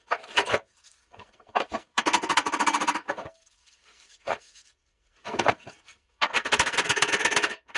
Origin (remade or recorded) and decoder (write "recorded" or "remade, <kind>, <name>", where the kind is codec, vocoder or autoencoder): remade, codec, SNAC